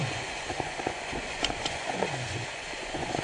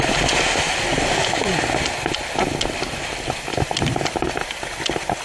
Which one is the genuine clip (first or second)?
second